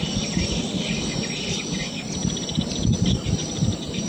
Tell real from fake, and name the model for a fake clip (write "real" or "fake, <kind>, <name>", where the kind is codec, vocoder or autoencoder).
real